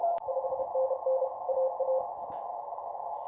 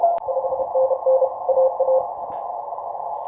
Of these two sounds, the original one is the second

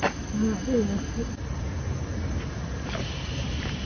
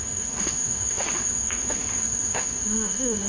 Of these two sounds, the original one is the first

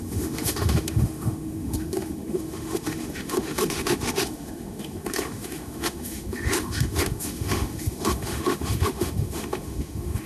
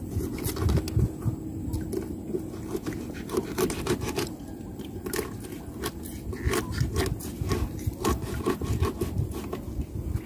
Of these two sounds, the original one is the second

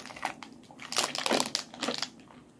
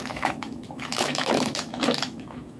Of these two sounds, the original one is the first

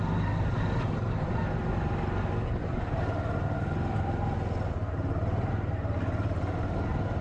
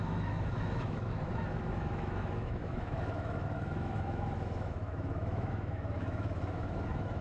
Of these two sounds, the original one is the first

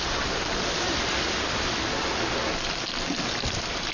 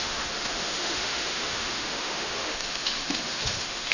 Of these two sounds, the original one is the first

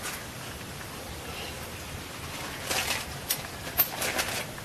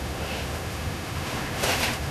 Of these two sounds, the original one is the first